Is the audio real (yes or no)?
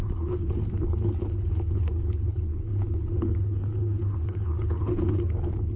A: no